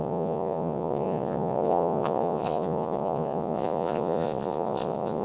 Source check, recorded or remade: remade